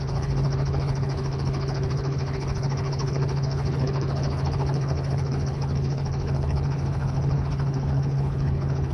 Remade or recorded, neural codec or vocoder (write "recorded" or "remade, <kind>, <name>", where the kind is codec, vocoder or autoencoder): remade, codec, HILCodec